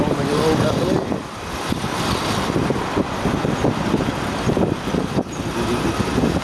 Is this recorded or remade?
recorded